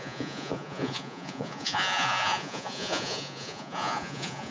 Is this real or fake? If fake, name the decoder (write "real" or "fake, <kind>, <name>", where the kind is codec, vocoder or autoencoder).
fake, vocoder, Vocos